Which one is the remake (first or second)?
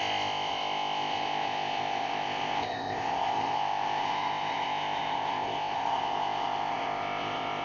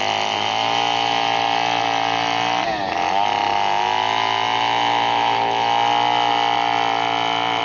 first